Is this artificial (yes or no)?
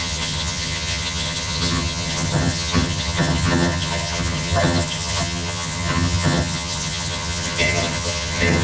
yes